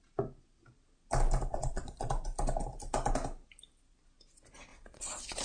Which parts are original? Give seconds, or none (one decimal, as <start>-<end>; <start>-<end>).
0.0-1.5; 2.1-4.7